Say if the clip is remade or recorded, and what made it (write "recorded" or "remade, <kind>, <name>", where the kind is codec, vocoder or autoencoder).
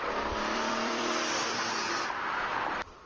remade, vocoder, BigVGAN v2